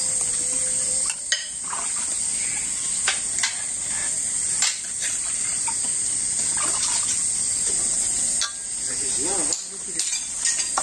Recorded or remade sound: recorded